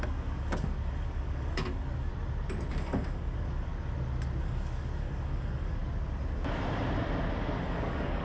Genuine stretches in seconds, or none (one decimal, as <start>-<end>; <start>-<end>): 2.1-2.7; 3.7-4.4; 5.8-7.6